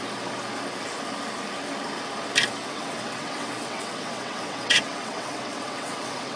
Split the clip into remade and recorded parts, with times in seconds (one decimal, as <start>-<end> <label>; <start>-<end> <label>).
0.0-2.6 recorded; 2.6-6.4 remade